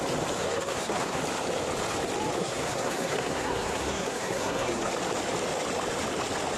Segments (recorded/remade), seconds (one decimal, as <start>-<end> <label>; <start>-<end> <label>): 0.0-0.4 recorded; 0.4-1.2 remade; 1.2-2.4 recorded; 2.4-4.9 remade; 4.9-6.6 recorded